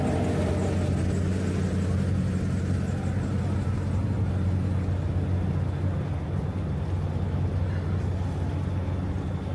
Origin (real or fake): real